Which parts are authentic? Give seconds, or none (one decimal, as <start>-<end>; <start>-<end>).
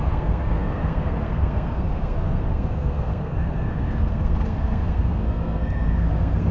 none